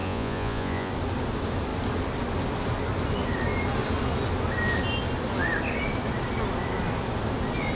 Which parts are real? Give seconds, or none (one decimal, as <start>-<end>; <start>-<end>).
0.9-7.8